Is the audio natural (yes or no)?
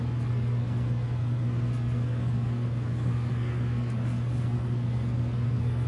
no